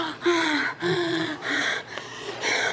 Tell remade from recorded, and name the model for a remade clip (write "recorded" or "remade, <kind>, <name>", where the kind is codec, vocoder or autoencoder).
remade, vocoder, Vocos